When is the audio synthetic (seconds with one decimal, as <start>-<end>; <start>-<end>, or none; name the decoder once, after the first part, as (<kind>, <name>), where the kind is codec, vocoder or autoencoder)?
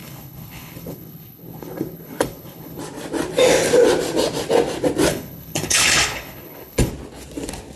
0.0-2.8 (codec, HILCodec); 5.1-6.9